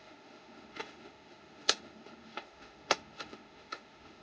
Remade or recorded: remade